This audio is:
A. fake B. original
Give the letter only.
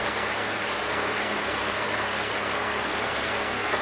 A